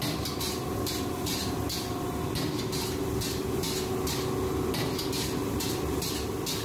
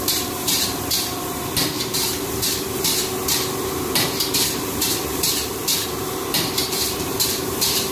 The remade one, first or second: second